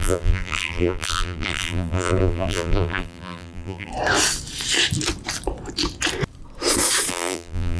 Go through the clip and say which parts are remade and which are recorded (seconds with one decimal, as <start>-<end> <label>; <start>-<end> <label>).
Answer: 0.0-3.9 remade; 3.9-7.1 recorded; 7.1-7.8 remade